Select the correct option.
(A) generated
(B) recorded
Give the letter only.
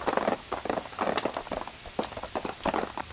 B